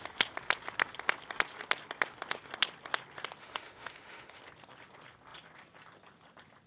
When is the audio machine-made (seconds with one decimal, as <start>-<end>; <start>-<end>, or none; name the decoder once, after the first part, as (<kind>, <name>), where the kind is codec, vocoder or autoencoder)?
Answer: 3.4-4.4 (autoencoder, DAC-VAE)